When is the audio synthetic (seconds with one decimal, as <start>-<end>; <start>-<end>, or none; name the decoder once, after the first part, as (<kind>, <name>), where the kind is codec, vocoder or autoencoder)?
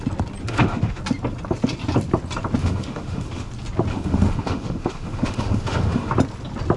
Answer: 0.4-1.0 (autoencoder, DAC-VAE); 2.6-3.5; 3.9-6.1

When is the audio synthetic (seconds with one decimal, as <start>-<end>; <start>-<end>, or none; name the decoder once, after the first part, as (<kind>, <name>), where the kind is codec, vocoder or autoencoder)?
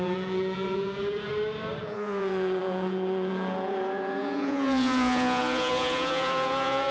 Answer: 0.0-1.3 (vocoder, Vocos); 1.8-6.9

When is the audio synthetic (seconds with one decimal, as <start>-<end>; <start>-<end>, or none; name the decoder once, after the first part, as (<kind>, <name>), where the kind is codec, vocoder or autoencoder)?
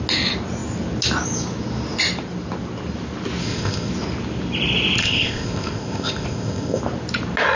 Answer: 3.4-3.9 (codec, ZipCodec); 5.0-6.8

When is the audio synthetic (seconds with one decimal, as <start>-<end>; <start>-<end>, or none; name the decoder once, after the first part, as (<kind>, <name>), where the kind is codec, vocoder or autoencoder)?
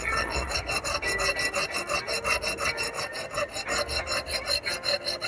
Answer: 0.0-0.5 (vocoder, Vocos)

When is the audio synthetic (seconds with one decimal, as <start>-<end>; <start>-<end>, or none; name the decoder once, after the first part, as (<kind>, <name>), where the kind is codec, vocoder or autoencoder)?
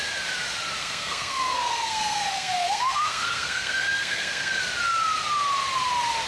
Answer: 0.8-4.6 (codec, SNAC)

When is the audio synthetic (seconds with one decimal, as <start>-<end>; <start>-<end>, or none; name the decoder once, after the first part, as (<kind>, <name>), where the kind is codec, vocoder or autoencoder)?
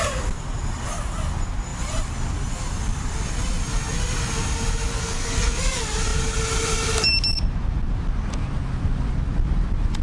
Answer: 4.9-5.6 (codec, SNAC)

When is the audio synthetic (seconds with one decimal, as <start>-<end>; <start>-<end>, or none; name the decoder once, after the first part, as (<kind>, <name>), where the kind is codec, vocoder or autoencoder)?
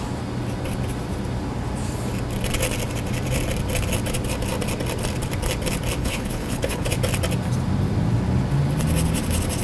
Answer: 6.0-6.9 (codec, HILCodec)